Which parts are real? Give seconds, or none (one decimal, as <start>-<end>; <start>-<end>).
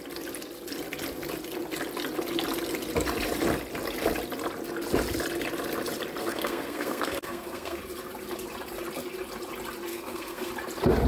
0.0-6.2; 7.8-9.9; 10.5-11.1